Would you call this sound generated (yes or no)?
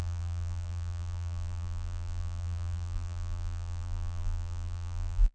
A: yes